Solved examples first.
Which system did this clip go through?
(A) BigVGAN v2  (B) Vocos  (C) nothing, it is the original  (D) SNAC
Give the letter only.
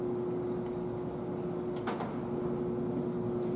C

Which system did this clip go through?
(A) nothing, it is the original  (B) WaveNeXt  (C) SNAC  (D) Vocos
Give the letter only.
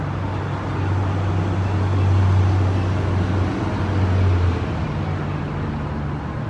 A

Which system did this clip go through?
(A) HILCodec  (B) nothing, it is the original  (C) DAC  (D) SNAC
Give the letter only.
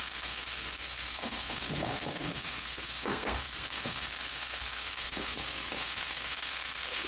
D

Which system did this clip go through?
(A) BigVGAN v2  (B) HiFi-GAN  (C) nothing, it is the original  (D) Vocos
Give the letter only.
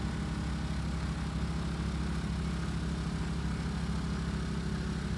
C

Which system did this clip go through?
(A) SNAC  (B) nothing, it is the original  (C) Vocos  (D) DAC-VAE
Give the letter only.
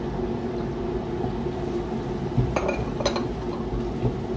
B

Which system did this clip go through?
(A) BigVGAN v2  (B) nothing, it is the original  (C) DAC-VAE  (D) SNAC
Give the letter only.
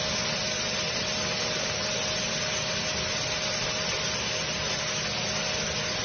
B